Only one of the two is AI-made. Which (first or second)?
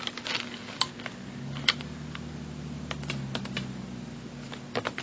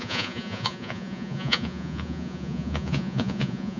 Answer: second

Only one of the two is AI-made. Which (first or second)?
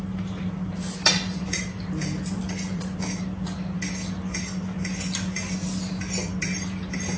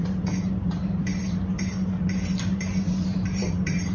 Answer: second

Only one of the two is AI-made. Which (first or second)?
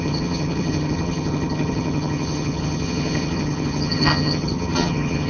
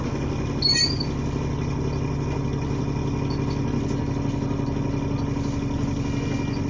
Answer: first